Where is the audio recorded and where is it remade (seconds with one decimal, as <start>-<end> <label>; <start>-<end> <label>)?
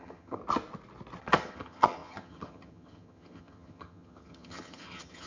0.0-0.4 remade; 0.4-1.2 recorded; 1.2-5.3 remade